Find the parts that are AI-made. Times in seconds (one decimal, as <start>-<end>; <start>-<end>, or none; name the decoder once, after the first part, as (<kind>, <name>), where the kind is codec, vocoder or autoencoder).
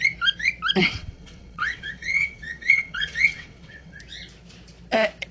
0.8-4.0 (vocoder, WaveNeXt)